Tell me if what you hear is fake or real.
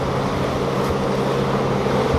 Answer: real